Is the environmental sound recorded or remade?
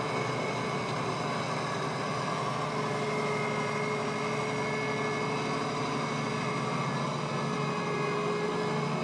recorded